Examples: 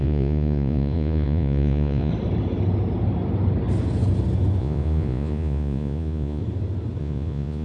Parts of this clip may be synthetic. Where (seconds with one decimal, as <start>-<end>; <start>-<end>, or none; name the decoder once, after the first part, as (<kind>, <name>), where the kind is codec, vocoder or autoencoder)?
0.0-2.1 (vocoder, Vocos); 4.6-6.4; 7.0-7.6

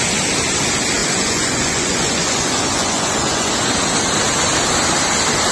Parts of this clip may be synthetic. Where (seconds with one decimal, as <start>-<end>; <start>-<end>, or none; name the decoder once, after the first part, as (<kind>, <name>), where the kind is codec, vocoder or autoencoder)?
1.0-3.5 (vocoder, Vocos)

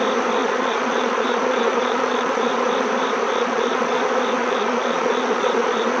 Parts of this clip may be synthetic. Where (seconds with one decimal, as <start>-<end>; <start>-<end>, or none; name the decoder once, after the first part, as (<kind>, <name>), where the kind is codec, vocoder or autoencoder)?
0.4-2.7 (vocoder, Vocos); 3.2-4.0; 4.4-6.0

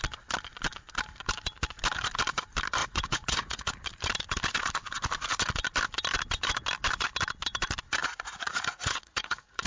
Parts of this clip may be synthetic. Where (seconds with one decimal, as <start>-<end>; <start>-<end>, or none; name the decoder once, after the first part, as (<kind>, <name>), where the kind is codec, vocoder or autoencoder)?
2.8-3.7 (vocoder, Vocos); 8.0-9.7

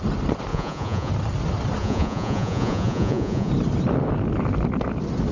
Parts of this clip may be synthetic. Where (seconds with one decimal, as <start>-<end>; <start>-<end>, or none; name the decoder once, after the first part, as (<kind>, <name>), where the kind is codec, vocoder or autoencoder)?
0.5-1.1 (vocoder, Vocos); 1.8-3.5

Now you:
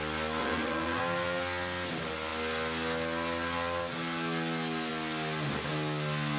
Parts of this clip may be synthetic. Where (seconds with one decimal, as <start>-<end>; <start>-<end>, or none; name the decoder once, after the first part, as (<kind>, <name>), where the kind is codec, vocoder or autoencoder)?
0.4-1.0 (vocoder, Vocos)

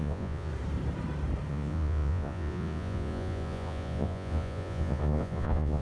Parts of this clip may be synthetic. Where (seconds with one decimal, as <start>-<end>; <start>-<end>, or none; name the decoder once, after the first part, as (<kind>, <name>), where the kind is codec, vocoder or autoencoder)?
0.0-0.5 (vocoder, Vocos); 1.5-5.8